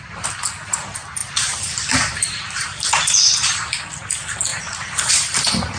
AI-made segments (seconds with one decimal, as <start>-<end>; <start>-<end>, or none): 1.2-3.2; 4.5-5.1